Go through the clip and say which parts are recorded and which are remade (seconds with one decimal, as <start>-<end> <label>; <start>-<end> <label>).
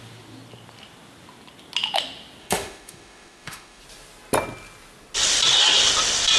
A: 0.0-2.4 recorded; 2.4-3.8 remade; 3.8-6.4 recorded